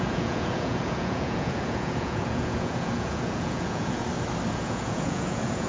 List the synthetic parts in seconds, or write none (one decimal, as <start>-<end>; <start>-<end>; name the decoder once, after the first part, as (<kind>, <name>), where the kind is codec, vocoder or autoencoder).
0.0-4.0 (vocoder, Vocos); 4.5-5.7